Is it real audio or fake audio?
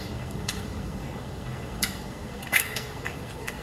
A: fake